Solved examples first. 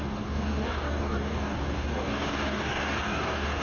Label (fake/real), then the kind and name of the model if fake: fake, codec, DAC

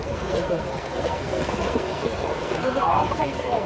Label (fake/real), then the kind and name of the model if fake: fake, codec, SNAC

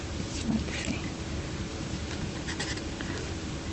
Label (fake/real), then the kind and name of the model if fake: real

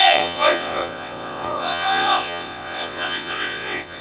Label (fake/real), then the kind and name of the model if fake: fake, vocoder, WaveNeXt